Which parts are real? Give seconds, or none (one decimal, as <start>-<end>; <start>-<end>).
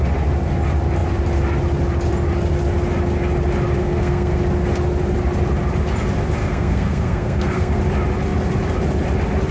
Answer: 0.0-3.8; 4.4-6.4; 7.8-9.5